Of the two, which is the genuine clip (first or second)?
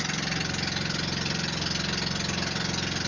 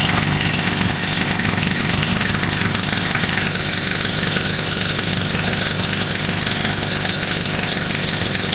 first